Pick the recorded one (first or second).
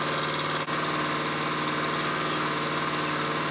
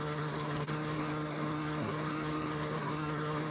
first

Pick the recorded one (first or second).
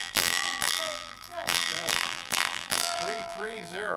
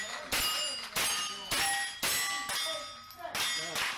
second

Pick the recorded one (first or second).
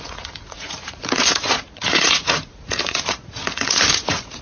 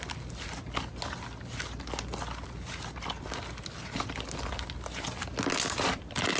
second